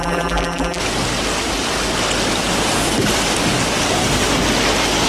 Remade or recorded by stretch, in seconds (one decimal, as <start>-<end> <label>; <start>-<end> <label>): 0.0-0.8 remade; 0.8-5.1 recorded